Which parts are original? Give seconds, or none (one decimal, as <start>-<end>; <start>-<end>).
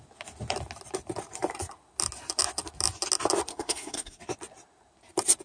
0.0-3.5; 4.2-5.4